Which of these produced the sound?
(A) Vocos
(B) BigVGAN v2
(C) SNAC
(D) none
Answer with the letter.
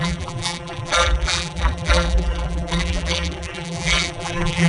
B